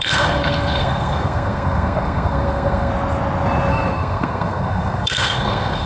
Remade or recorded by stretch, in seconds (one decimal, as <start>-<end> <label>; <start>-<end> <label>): 0.0-2.9 remade; 2.9-3.7 recorded; 3.7-5.9 remade